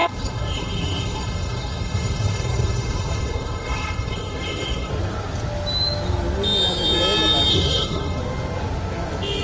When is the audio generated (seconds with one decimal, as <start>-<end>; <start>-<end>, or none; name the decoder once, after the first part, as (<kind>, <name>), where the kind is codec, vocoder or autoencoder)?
0.0-4.9 (codec, SNAC); 7.5-8.2

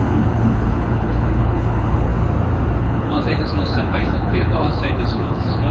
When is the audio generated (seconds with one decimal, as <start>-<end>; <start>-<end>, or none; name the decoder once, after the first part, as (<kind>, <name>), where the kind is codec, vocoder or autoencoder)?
0.0-2.1 (codec, HILCodec); 2.8-5.7

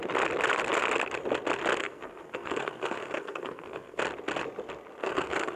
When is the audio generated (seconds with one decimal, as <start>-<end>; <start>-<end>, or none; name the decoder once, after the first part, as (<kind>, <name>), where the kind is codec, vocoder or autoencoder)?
1.8-4.0 (codec, SNAC); 5.0-5.6

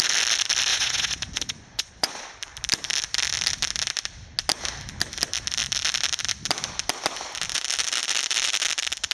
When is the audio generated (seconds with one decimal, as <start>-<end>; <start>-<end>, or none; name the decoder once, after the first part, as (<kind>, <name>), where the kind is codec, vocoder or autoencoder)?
0.7-2.1 (vocoder, Vocos)

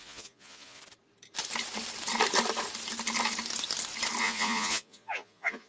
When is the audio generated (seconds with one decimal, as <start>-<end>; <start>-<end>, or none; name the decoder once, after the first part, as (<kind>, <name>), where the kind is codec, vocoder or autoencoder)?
0.0-0.8 (vocoder, Vocos); 4.2-5.7

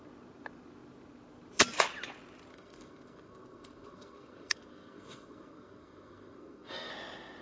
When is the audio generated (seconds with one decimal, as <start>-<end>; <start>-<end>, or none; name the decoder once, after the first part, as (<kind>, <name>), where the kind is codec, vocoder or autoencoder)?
2.5-6.9 (codec, SNAC)